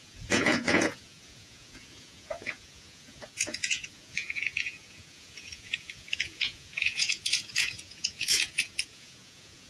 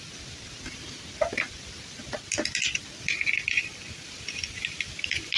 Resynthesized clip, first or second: first